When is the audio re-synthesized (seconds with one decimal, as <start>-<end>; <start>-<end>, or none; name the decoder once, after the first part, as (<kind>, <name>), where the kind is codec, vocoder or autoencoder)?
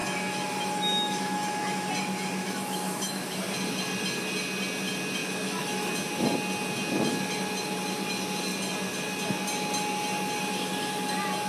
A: 0.0-1.9 (autoencoder, DAC-VAE); 2.4-3.4; 5.2-5.9